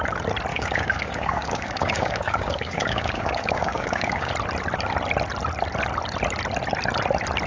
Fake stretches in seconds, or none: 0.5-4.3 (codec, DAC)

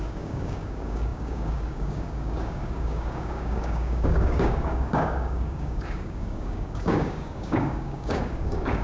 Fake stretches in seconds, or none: 0.0-8.8 (codec, DAC)

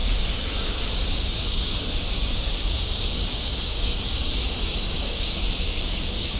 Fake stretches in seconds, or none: 0.0-6.4 (codec, DAC)

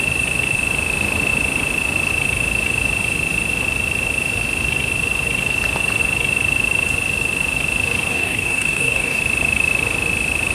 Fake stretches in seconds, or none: 8.1-9.2 (codec, DAC)

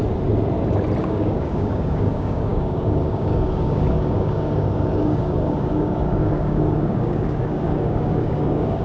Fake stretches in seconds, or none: 1.0-8.8 (codec, DAC)

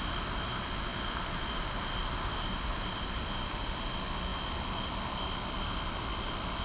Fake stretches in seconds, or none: none